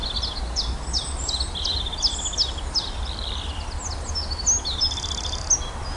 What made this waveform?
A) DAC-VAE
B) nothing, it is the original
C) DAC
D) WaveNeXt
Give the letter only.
B